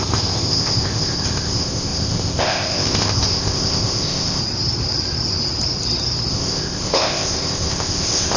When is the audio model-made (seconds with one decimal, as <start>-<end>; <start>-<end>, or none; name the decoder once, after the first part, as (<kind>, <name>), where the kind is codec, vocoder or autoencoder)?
0.0-4.4 (codec, ZipCodec); 6.3-8.4